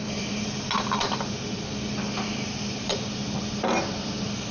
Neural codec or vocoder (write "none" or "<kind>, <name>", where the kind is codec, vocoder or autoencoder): none